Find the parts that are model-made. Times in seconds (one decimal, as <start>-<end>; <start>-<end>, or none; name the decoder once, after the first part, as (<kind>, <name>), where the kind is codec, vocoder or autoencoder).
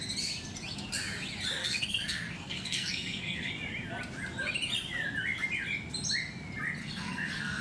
1.6-3.5 (codec, SNAC); 6.8-7.6